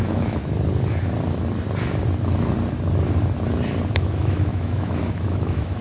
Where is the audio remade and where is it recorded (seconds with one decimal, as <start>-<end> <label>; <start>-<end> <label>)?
0.0-0.4 remade; 0.4-3.9 recorded; 3.9-5.8 remade